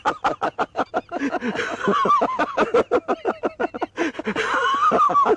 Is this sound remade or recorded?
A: recorded